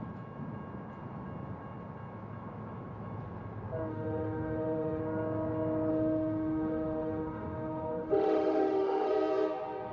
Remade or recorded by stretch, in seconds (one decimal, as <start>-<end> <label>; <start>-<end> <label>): 0.0-3.9 recorded; 3.9-5.0 remade; 5.0-5.9 recorded; 5.9-9.1 remade; 9.1-9.9 recorded